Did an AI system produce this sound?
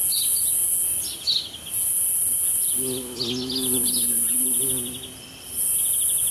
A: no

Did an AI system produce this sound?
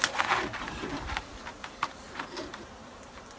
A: yes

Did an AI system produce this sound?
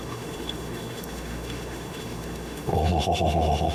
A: yes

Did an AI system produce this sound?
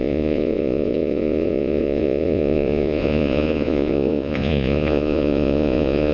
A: yes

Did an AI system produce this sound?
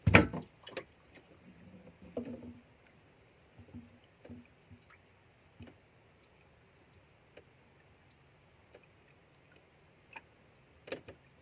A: no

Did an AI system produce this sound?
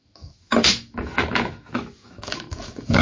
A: yes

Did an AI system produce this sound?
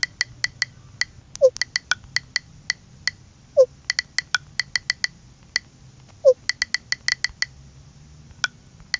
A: no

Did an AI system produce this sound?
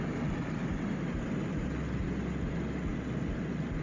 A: no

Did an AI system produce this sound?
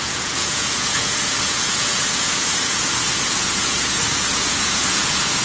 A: yes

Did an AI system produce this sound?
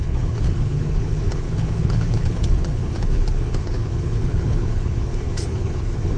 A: yes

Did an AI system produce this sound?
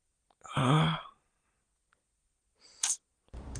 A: no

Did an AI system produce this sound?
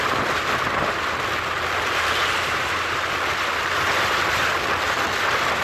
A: no